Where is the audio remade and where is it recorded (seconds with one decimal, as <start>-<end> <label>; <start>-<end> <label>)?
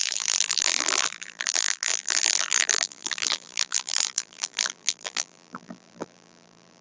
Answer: 0.0-6.8 remade